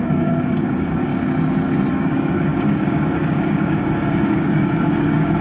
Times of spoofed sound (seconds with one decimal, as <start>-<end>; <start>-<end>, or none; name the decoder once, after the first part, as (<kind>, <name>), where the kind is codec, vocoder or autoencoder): 0.0-1.1 (codec, DAC); 1.9-5.4